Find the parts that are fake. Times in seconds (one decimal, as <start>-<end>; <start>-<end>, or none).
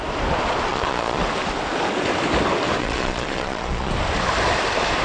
0.7-1.2; 2.8-3.9